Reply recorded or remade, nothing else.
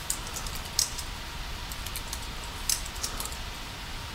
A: remade